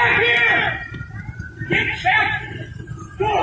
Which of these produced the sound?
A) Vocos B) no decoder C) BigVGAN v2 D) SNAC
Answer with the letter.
C